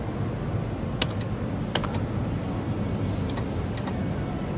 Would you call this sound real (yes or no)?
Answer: yes